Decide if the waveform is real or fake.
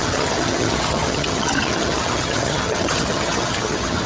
fake